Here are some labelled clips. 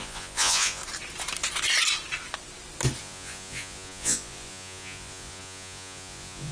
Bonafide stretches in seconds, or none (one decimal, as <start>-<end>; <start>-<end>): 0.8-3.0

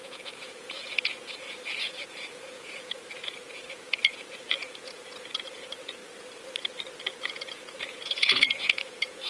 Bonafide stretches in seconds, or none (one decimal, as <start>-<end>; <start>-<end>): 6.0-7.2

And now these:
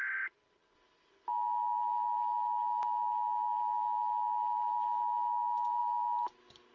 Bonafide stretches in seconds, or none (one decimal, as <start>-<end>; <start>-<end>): 0.0-6.7

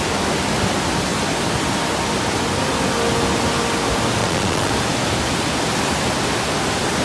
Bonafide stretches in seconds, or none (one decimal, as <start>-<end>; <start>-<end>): 0.0-4.2; 4.7-7.0

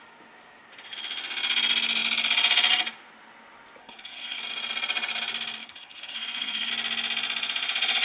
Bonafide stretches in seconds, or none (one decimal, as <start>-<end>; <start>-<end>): 0.0-3.8; 4.4-5.6; 6.7-8.0